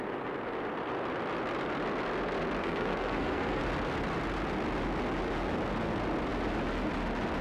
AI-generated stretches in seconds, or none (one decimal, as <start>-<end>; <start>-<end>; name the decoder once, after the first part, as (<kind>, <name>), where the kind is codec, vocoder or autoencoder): 2.6-3.6 (codec, SNAC)